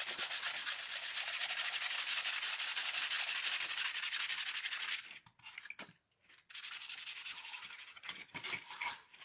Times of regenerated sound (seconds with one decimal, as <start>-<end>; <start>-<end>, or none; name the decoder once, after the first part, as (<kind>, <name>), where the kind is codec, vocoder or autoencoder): 7.3-8.2 (vocoder, HiFi-GAN)